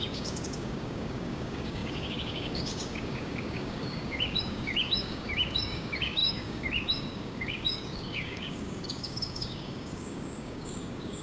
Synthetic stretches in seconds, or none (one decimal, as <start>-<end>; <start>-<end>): 0.0-11.2

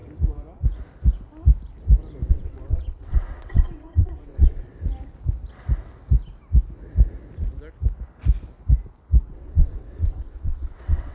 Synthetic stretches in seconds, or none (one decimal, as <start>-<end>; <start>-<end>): 2.3-4.7; 9.3-11.1

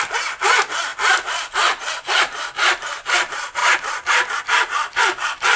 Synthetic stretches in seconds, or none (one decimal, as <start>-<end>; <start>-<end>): 3.6-4.4

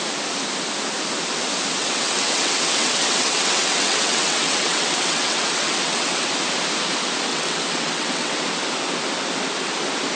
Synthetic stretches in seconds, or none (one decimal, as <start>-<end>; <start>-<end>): 1.8-6.3; 7.3-8.4

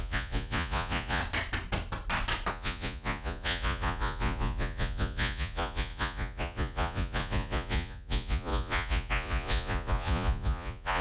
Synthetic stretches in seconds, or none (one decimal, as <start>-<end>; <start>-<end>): 0.0-1.2; 2.5-11.0